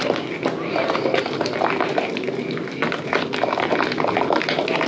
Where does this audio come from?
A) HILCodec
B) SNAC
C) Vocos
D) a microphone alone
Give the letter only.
D